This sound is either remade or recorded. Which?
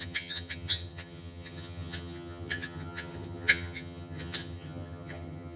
remade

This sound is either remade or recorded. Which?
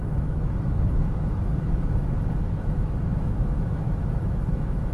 remade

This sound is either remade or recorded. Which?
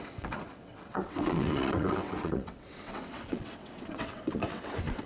remade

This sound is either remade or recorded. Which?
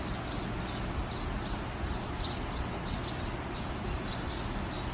recorded